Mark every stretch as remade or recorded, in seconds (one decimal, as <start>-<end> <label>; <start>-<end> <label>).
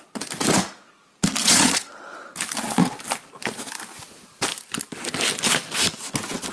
0.0-1.4 recorded; 1.4-2.0 remade; 2.0-6.5 recorded